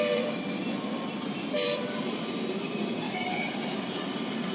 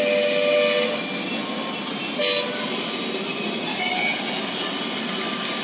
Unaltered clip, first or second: second